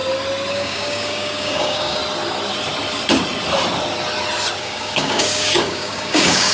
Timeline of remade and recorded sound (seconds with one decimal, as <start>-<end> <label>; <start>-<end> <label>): 0.0-0.5 recorded; 0.5-2.0 remade; 2.0-4.6 recorded; 4.6-6.5 remade

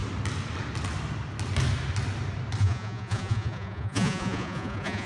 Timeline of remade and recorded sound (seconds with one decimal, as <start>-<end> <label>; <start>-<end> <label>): 0.0-2.6 recorded; 2.6-5.1 remade

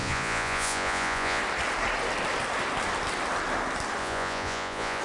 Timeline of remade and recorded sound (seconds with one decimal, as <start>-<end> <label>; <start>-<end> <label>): 0.0-1.4 remade; 1.4-4.0 recorded; 4.0-5.0 remade

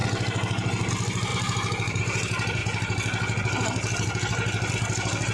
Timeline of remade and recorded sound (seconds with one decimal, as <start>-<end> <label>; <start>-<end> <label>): 0.0-5.3 recorded

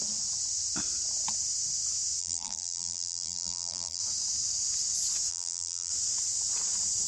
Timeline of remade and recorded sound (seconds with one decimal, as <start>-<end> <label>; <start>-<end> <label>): 0.0-2.2 recorded; 2.2-4.0 remade; 4.0-5.3 recorded; 5.3-5.9 remade; 5.9-7.1 recorded

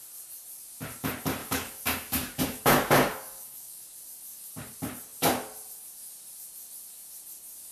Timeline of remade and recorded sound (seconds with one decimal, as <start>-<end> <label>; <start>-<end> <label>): 0.0-1.4 recorded; 1.4-3.8 remade; 3.8-7.7 recorded

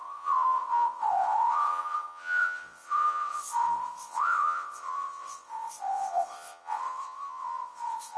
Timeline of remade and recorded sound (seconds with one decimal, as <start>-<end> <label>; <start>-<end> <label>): 0.0-8.2 remade

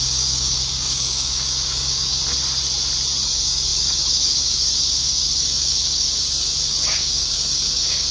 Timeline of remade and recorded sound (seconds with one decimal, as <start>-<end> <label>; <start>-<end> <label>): 0.0-2.2 remade; 2.2-3.2 recorded; 3.2-8.1 remade